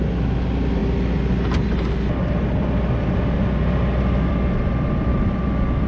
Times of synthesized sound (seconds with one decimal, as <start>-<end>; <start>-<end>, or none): none